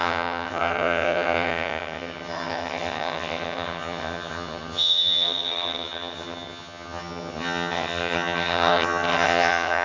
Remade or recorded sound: remade